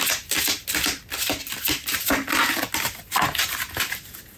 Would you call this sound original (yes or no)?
yes